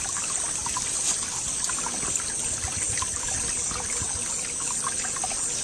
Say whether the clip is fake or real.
real